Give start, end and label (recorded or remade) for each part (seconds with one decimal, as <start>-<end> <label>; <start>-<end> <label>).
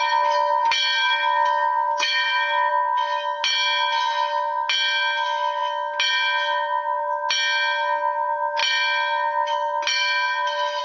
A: 0.0-1.0 recorded; 1.0-2.7 remade; 2.7-10.8 recorded